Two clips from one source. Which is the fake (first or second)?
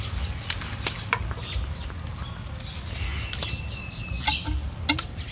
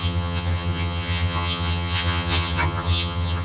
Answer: second